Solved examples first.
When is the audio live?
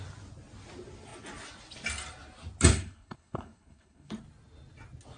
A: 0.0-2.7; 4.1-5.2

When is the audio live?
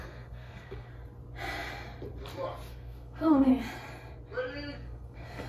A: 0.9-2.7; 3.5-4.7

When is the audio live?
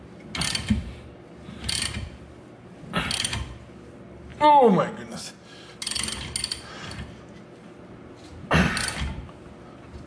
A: 0.0-10.1